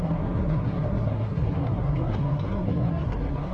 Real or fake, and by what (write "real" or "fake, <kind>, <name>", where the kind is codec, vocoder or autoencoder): fake, codec, SNAC